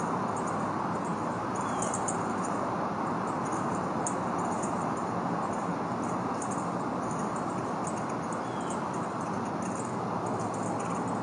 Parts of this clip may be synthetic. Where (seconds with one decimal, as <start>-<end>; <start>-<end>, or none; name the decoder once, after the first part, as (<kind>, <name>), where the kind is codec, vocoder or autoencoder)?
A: 1.1-2.8 (vocoder, BigVGAN v2); 3.5-6.3